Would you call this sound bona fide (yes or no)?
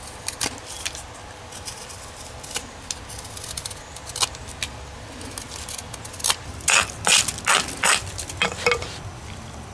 yes